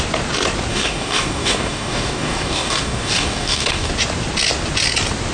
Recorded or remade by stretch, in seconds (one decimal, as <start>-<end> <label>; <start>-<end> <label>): 0.0-0.7 recorded; 0.7-3.9 remade; 3.9-5.3 recorded